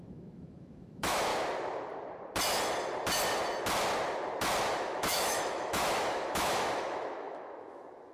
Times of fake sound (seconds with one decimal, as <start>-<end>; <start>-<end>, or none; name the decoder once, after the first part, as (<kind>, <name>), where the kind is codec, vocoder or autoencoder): 0.0-1.3 (autoencoder, DAC-VAE); 4.7-8.1